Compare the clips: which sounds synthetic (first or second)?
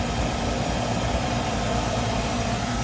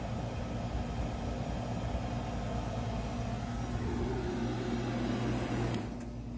first